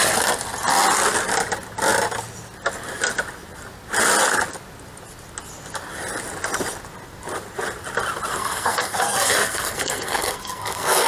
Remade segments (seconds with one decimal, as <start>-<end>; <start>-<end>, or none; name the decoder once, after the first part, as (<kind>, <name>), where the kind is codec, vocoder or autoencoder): 8.3-11.1 (codec, SNAC)